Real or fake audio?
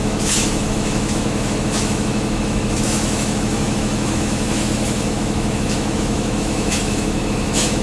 fake